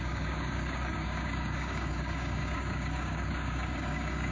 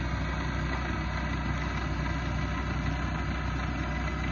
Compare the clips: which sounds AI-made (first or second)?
first